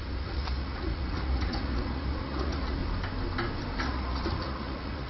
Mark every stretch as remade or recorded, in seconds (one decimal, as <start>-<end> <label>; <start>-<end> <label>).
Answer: 0.0-2.8 remade; 2.8-3.8 recorded; 3.8-5.1 remade

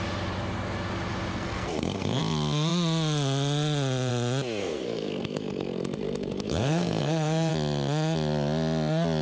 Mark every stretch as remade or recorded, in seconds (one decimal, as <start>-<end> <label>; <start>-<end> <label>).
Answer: 0.0-1.3 recorded; 1.3-2.2 remade; 2.2-4.6 recorded; 4.6-7.5 remade; 7.5-9.2 recorded